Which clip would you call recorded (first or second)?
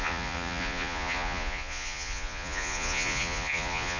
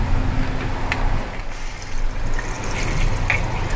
second